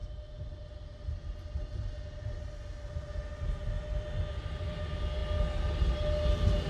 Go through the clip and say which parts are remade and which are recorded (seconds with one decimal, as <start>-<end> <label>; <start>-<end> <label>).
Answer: 0.0-6.7 recorded